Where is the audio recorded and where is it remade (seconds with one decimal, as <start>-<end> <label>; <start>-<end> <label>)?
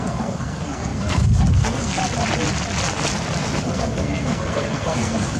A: 0.0-2.0 remade; 2.0-3.6 recorded; 3.6-5.4 remade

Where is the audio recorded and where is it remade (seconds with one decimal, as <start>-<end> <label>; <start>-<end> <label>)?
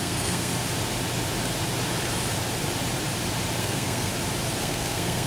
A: 0.0-0.5 remade; 0.5-3.6 recorded; 3.6-4.1 remade; 4.1-4.6 recorded; 4.6-5.3 remade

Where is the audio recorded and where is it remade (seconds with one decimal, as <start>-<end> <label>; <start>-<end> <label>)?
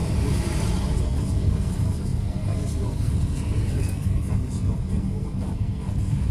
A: 0.0-1.0 recorded; 1.0-6.3 remade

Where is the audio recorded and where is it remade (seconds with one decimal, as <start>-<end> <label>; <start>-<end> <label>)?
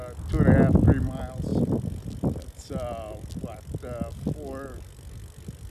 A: 0.0-5.7 recorded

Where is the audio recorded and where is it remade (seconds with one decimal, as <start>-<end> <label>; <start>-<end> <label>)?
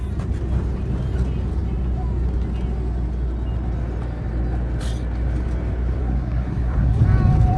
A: 0.0-6.0 recorded; 6.0-7.0 remade; 7.0-7.6 recorded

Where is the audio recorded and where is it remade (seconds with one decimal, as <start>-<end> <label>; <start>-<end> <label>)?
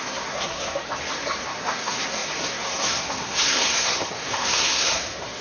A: 0.0-0.8 remade; 0.8-1.4 recorded; 1.4-5.4 remade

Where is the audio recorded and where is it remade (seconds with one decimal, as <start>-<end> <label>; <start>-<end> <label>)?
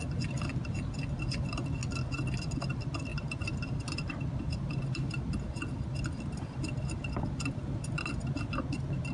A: 0.0-9.1 recorded